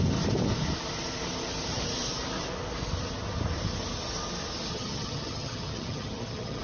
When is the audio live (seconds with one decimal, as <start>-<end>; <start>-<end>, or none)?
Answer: 0.0-4.7